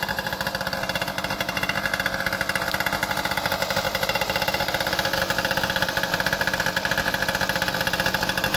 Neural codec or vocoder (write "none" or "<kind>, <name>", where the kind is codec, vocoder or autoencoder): vocoder, BigVGAN v2